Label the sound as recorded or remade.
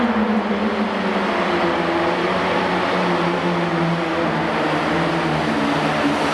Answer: recorded